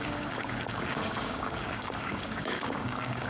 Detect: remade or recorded remade